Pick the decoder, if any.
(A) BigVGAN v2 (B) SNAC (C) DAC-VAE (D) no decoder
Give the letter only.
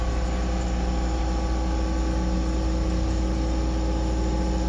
D